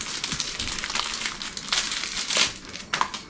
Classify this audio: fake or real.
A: real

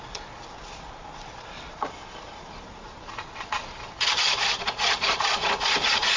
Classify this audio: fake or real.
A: fake